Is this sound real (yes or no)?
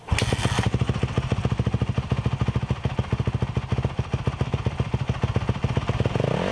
yes